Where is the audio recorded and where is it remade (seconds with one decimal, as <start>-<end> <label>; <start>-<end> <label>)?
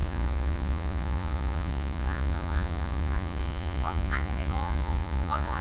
0.0-5.6 remade